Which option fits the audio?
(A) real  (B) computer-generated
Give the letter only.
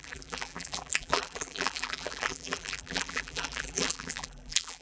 B